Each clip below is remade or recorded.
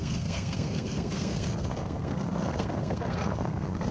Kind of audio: remade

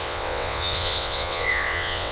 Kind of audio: remade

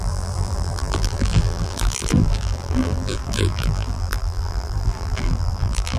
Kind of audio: remade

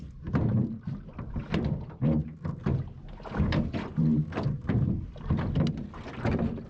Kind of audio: recorded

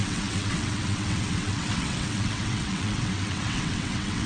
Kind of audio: remade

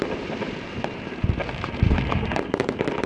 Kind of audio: remade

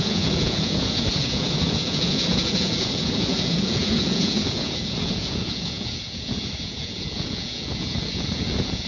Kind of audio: remade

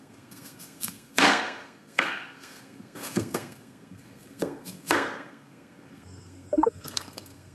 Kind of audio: remade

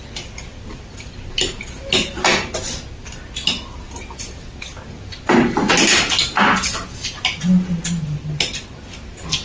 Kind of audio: recorded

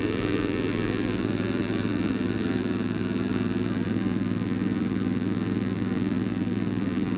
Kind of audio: remade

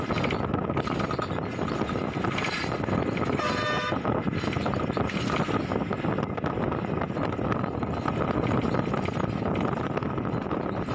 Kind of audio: recorded